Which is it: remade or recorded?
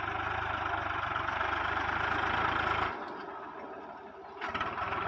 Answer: recorded